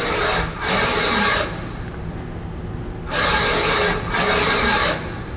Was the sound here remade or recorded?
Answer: recorded